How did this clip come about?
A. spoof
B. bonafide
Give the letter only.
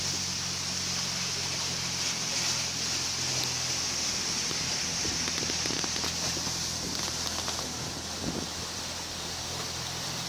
B